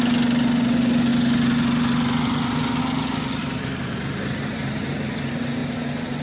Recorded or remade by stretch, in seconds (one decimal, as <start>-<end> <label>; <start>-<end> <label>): 0.0-3.4 recorded; 3.4-4.9 remade; 4.9-5.6 recorded; 5.6-6.2 remade